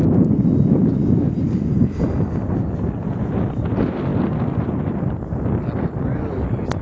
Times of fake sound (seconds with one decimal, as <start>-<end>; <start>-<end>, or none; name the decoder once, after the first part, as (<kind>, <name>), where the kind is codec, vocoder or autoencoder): none